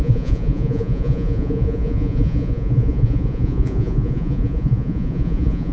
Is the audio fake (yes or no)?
yes